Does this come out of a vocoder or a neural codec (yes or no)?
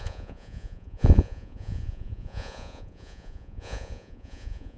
yes